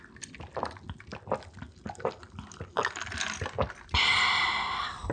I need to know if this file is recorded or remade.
recorded